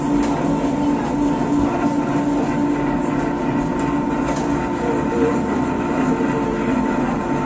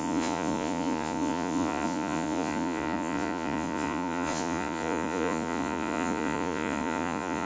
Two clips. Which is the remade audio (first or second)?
second